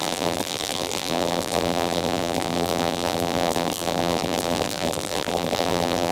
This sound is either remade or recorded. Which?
remade